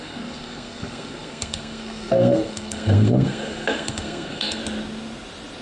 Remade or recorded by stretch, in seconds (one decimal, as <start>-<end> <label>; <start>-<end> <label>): 0.0-4.6 remade; 4.6-5.6 recorded